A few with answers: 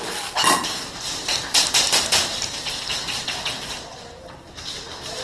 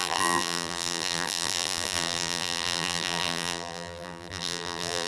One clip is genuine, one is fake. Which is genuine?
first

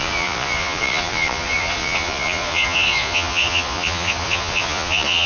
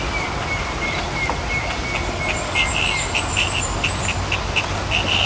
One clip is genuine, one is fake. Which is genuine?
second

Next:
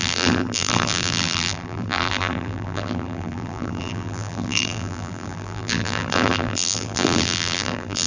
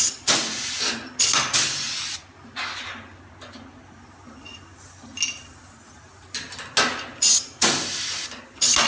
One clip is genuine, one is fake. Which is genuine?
second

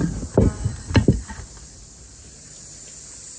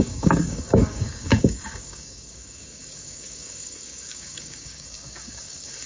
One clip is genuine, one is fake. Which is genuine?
first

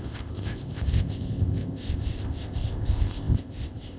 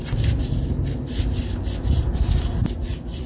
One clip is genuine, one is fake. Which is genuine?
second